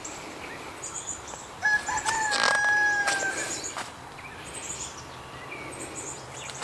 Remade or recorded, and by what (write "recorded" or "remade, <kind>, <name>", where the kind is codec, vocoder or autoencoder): recorded